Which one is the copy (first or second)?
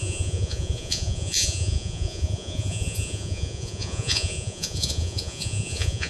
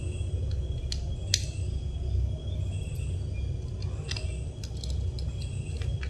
first